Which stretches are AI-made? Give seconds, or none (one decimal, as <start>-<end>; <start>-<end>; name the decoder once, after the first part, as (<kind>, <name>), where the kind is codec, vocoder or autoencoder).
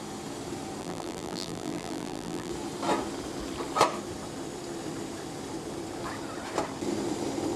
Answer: 0.8-2.5 (vocoder, BigVGAN v2)